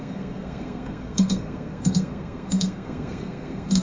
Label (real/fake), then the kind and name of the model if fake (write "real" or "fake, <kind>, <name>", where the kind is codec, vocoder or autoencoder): fake, codec, SNAC